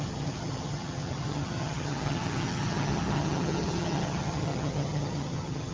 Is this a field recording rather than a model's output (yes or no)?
no